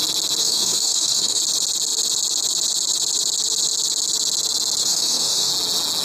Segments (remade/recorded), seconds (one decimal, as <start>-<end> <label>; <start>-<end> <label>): 0.0-0.4 recorded; 0.4-1.4 remade; 1.4-4.8 recorded; 4.8-5.5 remade; 5.5-6.0 recorded